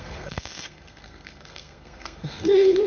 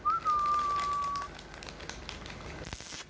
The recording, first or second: second